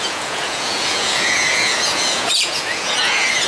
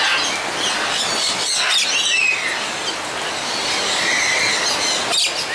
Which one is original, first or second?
second